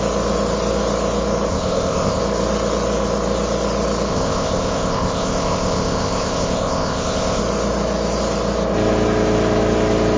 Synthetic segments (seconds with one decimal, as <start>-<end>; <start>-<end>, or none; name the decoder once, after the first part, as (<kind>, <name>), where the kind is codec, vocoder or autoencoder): 1.5-2.2 (codec, ZipCodec); 4.1-7.4